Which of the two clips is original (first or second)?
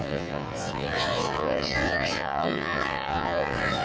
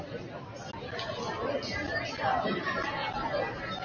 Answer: second